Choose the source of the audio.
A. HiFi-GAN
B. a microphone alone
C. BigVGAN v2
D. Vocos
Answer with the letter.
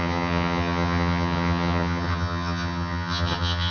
A